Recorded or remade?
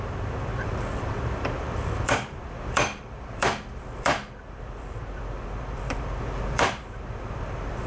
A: remade